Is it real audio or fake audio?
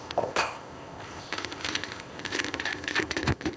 fake